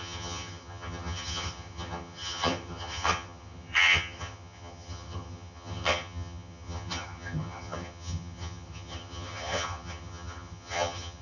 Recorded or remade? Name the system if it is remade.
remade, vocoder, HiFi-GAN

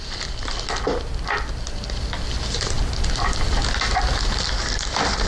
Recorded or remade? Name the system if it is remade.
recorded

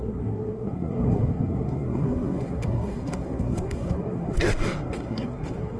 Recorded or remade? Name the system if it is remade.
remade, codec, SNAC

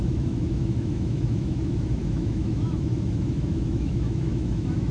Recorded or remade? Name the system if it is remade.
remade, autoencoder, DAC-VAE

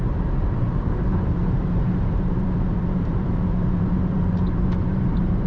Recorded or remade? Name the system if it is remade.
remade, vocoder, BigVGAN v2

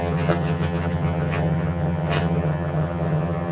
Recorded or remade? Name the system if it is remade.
remade, vocoder, HiFi-GAN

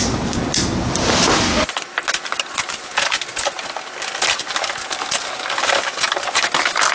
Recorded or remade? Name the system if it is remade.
recorded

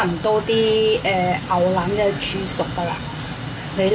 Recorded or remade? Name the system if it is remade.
recorded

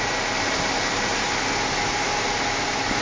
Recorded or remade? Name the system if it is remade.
recorded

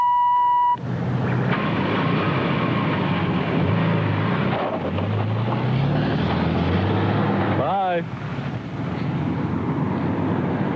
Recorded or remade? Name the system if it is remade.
recorded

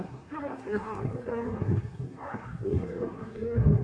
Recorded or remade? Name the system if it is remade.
remade, codec, SNAC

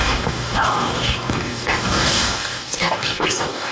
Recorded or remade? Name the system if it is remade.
remade, codec, DAC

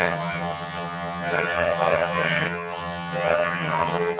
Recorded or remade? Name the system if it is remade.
remade, vocoder, HiFi-GAN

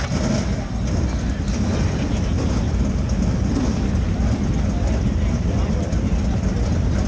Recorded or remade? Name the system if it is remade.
recorded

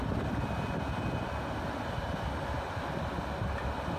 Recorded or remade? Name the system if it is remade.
recorded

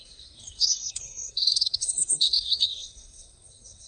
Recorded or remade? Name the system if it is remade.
remade, codec, SNAC